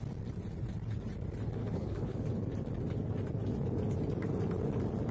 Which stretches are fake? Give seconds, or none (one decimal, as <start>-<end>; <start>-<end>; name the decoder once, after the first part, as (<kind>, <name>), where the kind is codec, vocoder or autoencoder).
1.6-2.3 (codec, HILCodec)